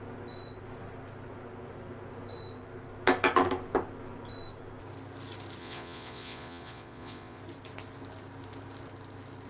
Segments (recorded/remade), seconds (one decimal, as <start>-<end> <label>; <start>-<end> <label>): 0.0-5.6 recorded; 5.6-7.4 remade; 7.4-9.5 recorded